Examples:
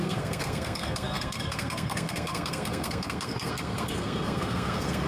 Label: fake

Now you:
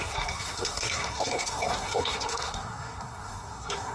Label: fake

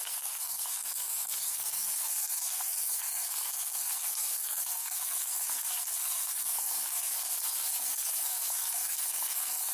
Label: fake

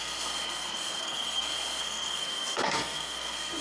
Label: fake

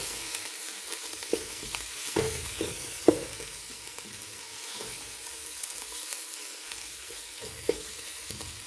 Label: fake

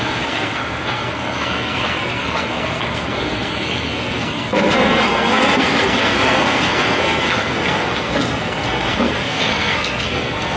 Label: fake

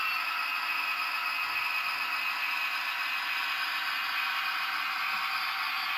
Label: real